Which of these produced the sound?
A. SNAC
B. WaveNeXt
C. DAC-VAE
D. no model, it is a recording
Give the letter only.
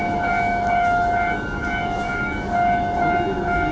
C